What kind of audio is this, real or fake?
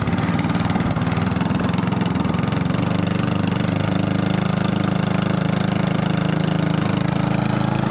real